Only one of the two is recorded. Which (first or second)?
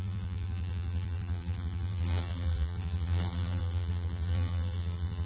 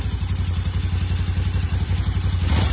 second